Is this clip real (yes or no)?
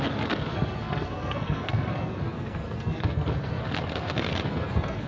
no